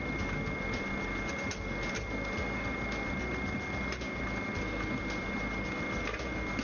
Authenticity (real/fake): real